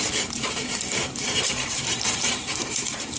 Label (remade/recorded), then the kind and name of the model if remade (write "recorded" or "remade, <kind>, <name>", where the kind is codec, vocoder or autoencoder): remade, vocoder, BigVGAN v2